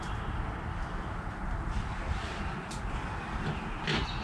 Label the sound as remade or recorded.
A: recorded